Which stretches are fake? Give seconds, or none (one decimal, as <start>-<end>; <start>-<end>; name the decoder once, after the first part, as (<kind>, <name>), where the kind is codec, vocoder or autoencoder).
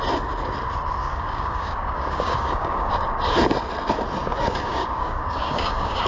1.0-2.9 (codec, DAC); 4.2-6.1